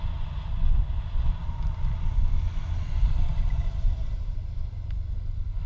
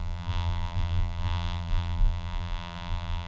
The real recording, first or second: first